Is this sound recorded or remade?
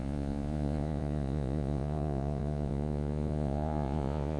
remade